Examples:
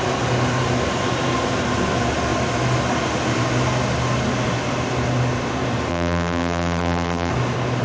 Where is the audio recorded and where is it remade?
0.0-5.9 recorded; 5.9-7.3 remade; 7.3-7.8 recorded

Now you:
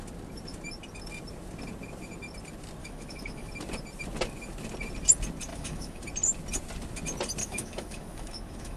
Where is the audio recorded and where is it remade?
0.0-2.8 recorded; 2.8-3.5 remade; 3.5-5.5 recorded; 5.5-6.0 remade; 6.0-7.4 recorded; 7.4-8.8 remade

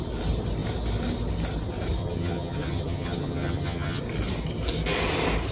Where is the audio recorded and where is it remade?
0.0-2.0 recorded; 2.0-4.0 remade; 4.0-5.5 recorded

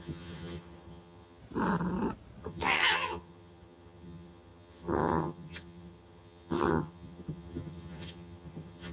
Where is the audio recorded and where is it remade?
0.0-1.4 remade; 1.4-2.4 recorded; 2.4-8.9 remade

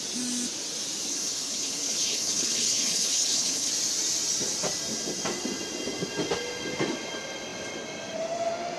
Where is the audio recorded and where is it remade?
0.0-1.1 recorded; 1.1-3.7 remade; 3.7-8.8 recorded